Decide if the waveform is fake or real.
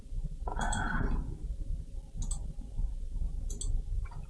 real